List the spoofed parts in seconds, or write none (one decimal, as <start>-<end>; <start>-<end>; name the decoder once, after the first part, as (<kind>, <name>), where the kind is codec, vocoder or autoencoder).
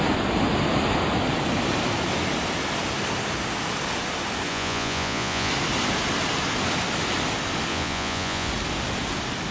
4.5-5.5 (vocoder, Vocos); 7.7-8.5